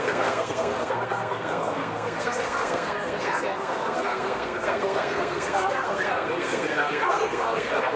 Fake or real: fake